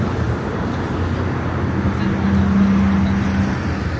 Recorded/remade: recorded